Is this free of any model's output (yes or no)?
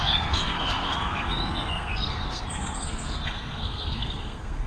no